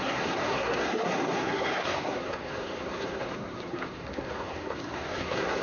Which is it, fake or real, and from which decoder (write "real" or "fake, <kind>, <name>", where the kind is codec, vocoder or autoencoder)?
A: fake, codec, SNAC